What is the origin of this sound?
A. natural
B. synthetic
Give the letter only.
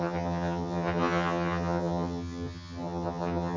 B